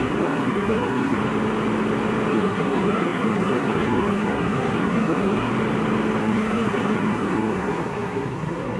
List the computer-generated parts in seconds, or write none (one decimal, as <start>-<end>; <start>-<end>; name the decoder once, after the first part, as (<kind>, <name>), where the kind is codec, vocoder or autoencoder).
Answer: 0.0-1.2 (codec, SNAC); 2.3-5.5; 6.2-8.8